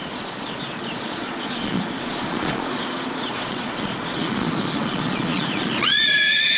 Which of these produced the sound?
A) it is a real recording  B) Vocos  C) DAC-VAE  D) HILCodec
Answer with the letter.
B